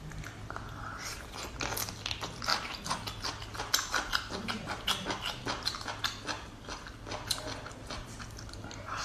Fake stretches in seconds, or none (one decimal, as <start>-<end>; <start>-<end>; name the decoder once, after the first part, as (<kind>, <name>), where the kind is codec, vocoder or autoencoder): none